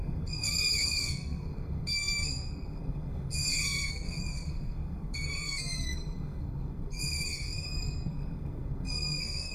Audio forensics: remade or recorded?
remade